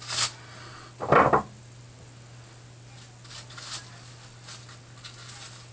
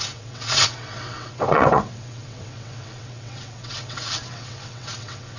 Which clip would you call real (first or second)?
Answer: first